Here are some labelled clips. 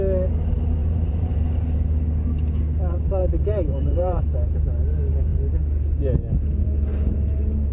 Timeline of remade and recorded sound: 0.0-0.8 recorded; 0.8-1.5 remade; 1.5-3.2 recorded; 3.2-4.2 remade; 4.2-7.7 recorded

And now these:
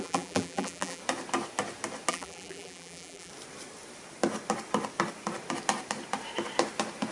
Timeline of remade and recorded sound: 0.0-1.0 remade; 1.0-2.1 recorded; 2.1-3.3 remade; 3.3-7.1 recorded

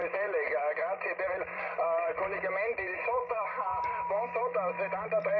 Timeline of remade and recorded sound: 0.0-5.4 remade

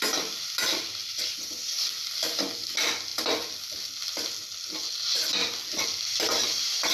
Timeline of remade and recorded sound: 0.0-1.0 recorded; 1.0-1.6 remade; 1.6-6.9 recorded

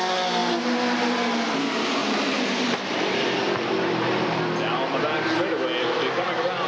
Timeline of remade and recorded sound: 0.0-2.0 recorded; 2.0-4.4 remade; 4.4-6.7 recorded

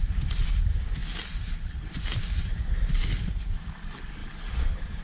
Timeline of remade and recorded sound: 0.0-1.0 recorded; 1.0-2.9 remade; 2.9-4.2 recorded; 4.2-5.0 remade

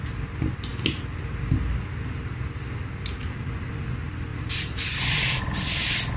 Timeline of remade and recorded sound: 0.0-4.3 recorded; 4.3-5.4 remade; 5.4-6.2 recorded

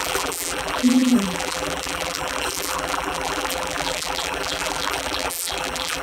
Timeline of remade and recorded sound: 0.0-6.0 remade